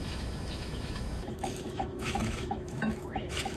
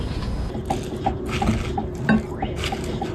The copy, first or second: first